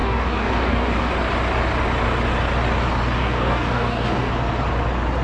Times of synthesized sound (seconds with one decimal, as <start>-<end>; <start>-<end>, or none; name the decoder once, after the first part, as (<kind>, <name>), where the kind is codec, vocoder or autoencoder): 0.0-1.1 (codec, DAC); 3.2-4.3